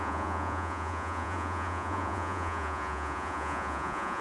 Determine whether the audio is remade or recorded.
remade